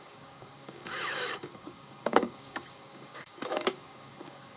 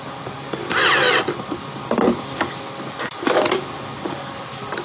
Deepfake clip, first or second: first